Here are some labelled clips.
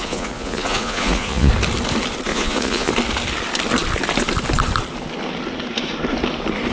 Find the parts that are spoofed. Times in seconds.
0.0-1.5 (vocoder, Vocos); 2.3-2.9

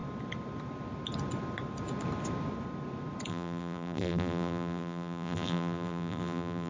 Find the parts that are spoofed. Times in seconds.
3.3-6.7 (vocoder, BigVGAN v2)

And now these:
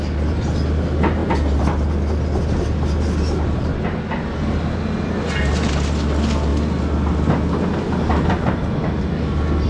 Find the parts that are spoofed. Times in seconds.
none

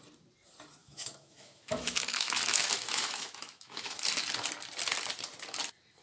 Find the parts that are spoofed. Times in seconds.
0.8-4.0 (autoencoder, DAC-VAE)